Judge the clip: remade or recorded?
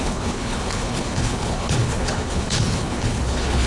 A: remade